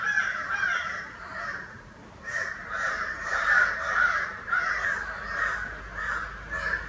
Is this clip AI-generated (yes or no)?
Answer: yes